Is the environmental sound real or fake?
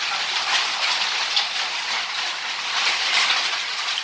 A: real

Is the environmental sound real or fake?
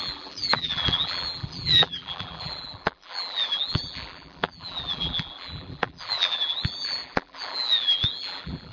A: fake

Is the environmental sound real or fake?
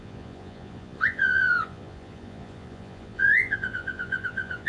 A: fake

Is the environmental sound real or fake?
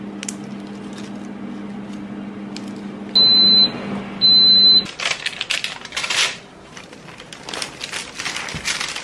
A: real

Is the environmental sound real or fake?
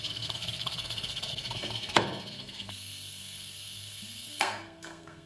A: fake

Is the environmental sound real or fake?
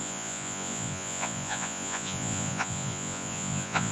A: fake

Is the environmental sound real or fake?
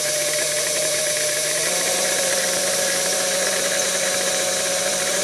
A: fake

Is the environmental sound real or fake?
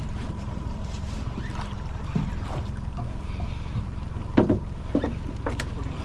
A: fake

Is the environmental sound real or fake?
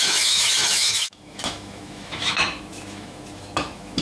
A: fake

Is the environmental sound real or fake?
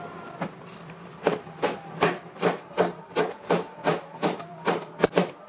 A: fake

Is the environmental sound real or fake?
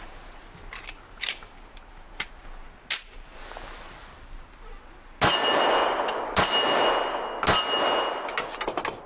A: real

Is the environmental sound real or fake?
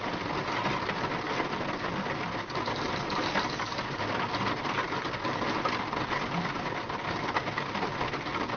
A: real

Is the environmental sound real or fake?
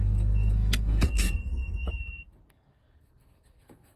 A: fake